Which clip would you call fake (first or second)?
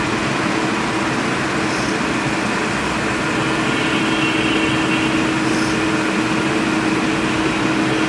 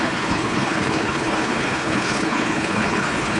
second